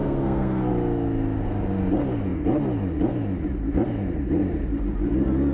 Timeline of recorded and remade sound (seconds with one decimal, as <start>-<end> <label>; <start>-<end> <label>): 0.0-0.7 remade; 0.7-5.5 recorded